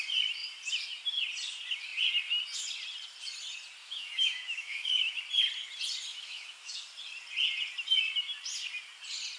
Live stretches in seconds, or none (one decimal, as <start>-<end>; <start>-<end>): 0.0-3.8; 5.2-6.1; 6.8-9.4